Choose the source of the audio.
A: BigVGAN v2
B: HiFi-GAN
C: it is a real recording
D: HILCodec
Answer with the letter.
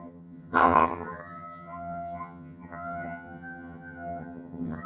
B